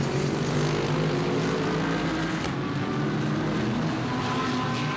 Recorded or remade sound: recorded